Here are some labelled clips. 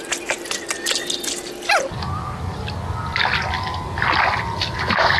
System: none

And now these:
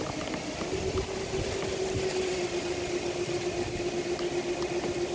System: none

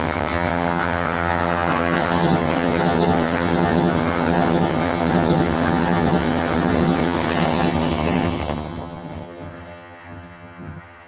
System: vocoder, HiFi-GAN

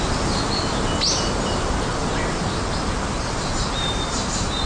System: none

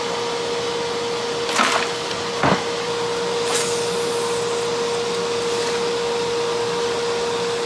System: none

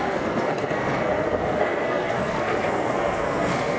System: codec, SNAC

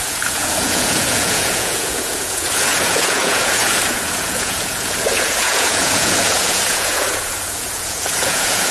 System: vocoder, Vocos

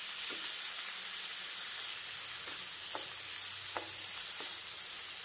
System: none